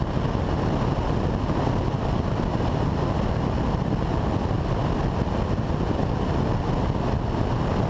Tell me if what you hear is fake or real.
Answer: real